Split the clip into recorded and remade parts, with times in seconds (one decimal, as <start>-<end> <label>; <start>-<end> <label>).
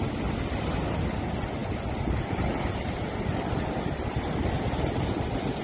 0.0-5.6 recorded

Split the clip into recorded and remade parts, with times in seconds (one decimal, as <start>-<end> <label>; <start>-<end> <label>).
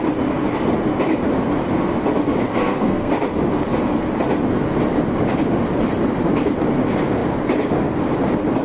0.0-2.6 recorded; 2.6-3.1 remade; 3.1-8.6 recorded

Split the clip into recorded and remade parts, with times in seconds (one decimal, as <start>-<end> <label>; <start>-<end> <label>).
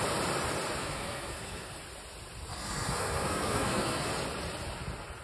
0.0-0.8 recorded; 0.8-1.8 remade; 1.8-2.5 recorded; 2.5-4.1 remade; 4.1-5.2 recorded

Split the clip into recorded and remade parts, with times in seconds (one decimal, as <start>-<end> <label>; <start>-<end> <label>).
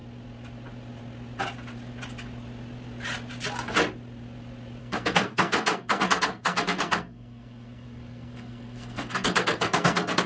0.0-4.8 recorded; 4.8-10.3 remade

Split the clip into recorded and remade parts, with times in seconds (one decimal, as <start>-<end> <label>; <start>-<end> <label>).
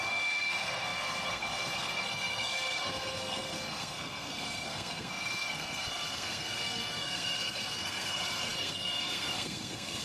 0.0-10.0 remade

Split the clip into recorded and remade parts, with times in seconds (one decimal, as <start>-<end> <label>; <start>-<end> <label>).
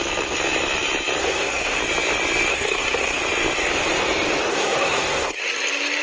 0.0-1.2 recorded; 1.2-1.8 remade; 1.8-2.5 recorded; 2.5-3.2 remade; 3.2-4.5 recorded; 4.5-5.4 remade; 5.4-6.0 recorded